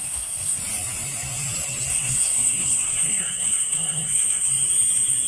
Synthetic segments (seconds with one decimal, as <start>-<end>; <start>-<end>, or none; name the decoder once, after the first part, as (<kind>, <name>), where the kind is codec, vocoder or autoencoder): 0.0-0.6 (codec, SNAC); 1.9-4.5